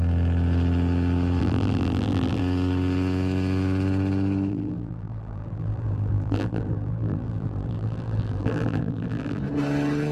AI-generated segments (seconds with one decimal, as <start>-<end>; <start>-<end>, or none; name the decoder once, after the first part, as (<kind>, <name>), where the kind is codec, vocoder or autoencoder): 1.4-2.4 (vocoder, BigVGAN v2); 4.5-9.4